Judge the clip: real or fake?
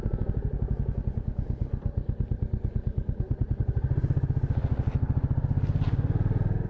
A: real